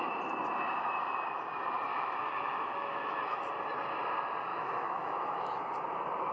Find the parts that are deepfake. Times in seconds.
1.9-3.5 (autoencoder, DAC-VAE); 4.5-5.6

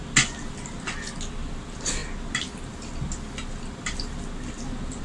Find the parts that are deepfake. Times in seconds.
none

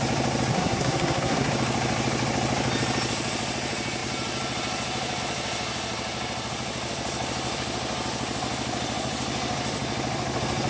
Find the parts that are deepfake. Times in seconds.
0.5-1.5 (codec, SNAC)

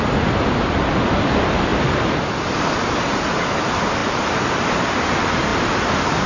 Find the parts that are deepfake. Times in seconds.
1.7-2.8 (vocoder, BigVGAN v2); 4.0-5.0